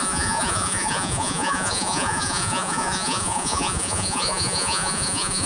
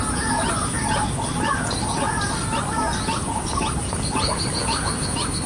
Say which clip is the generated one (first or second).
first